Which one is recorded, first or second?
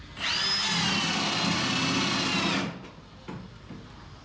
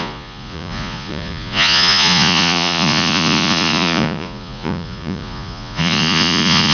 first